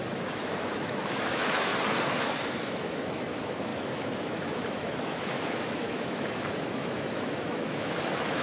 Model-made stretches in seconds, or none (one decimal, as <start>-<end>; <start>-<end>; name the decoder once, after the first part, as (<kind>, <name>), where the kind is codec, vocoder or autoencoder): 0.0-1.7 (autoencoder, DAC-VAE); 2.2-8.4

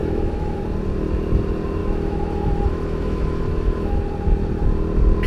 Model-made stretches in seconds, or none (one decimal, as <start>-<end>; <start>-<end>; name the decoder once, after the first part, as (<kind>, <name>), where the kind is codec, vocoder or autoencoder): 0.0-0.6 (autoencoder, DAC-VAE); 1.8-4.0

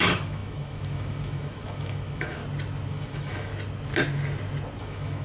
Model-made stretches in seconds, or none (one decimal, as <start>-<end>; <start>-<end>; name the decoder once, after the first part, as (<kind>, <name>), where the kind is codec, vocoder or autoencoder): 0.0-2.4 (autoencoder, DAC-VAE); 2.9-3.5; 4.8-5.2

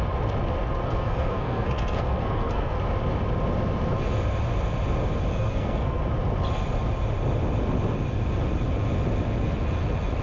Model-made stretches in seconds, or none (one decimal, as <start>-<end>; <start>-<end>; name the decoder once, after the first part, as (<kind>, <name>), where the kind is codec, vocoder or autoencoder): 0.8-2.7 (codec, SNAC); 5.3-6.0

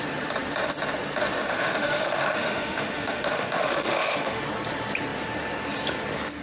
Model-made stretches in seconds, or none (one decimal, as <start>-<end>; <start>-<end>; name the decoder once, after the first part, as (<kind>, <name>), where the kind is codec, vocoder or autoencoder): 1.5-4.4 (autoencoder, DAC-VAE)